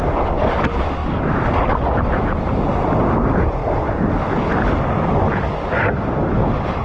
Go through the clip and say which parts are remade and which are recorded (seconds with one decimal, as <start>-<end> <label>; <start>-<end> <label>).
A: 0.0-6.8 recorded